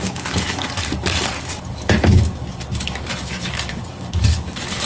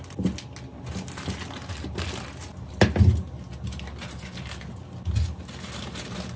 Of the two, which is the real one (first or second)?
second